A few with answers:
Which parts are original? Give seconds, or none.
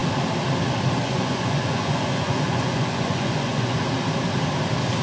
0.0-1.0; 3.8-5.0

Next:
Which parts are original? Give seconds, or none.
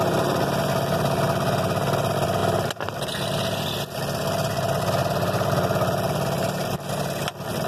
0.0-7.7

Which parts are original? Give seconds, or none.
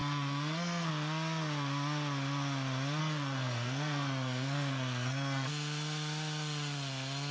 0.9-3.0; 5.5-7.3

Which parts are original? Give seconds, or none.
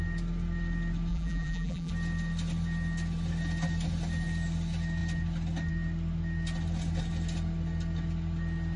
0.0-1.1; 1.9-8.8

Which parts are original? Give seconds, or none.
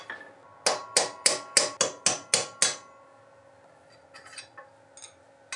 0.0-5.6